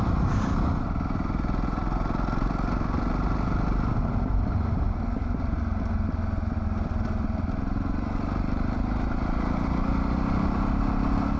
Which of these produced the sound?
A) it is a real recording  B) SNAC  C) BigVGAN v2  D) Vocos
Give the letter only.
A